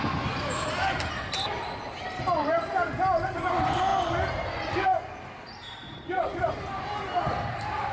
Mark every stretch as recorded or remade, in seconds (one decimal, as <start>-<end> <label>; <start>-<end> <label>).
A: 0.0-7.9 recorded